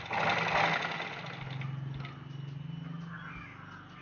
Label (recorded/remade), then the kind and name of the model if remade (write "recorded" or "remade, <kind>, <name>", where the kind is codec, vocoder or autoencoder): recorded